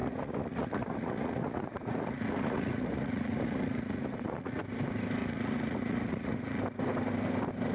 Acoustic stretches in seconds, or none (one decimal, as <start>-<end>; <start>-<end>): 4.6-5.2; 6.6-7.7